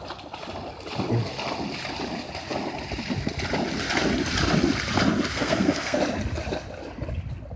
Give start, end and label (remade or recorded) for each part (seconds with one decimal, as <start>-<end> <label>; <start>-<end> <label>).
0.0-5.3 recorded; 5.3-6.0 remade; 6.0-7.6 recorded